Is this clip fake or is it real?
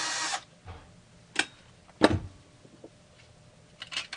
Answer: real